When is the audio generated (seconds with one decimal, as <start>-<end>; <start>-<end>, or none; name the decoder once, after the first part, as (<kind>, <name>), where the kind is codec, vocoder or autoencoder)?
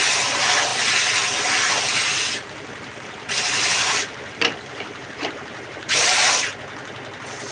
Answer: 2.9-6.4 (vocoder, BigVGAN v2)